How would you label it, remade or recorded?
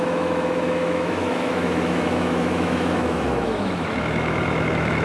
remade